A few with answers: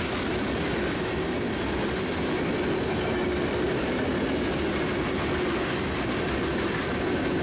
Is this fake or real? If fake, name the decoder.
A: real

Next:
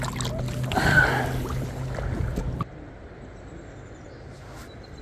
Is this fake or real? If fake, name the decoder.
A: real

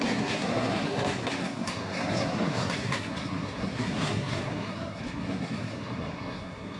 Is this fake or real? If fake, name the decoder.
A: fake, codec, SNAC